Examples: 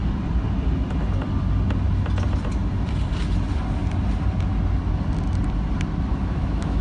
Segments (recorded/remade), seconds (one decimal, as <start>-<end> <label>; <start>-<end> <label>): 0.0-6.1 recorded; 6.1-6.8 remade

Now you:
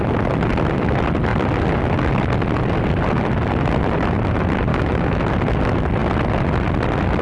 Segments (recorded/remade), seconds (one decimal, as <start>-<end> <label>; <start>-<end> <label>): 0.0-4.7 recorded; 4.7-5.2 remade; 5.2-7.2 recorded

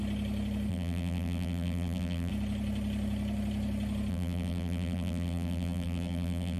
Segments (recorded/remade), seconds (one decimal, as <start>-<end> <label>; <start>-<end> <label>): 0.0-0.7 recorded; 0.7-2.3 remade; 2.3-4.1 recorded; 4.1-6.6 remade

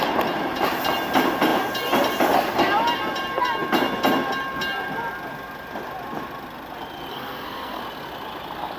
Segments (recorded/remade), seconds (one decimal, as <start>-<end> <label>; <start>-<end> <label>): 0.0-7.1 recorded; 7.1-7.8 remade; 7.8-8.8 recorded

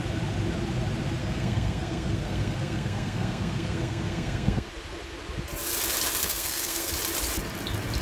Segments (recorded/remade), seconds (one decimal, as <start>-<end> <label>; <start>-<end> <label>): 0.0-1.2 recorded; 1.2-4.7 remade; 4.7-6.2 recorded; 6.2-6.9 remade; 6.9-8.0 recorded

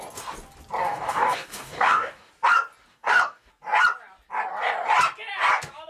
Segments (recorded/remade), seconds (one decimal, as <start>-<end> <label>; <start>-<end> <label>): 0.0-0.8 recorded; 0.8-2.3 remade; 2.3-2.9 recorded; 2.9-3.5 remade; 3.5-5.9 recorded